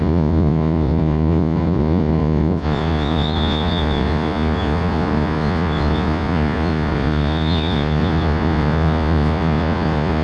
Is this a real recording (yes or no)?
no